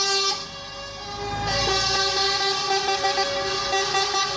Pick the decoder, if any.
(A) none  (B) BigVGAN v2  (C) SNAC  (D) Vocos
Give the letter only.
A